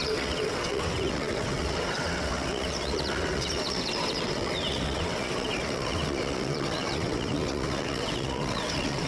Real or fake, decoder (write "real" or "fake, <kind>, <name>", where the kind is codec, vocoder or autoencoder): fake, vocoder, WaveNeXt